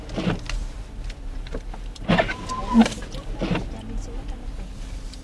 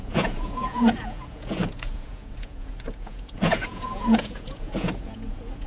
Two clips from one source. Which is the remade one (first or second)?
second